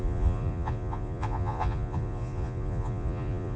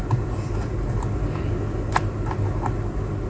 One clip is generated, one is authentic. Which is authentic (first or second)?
second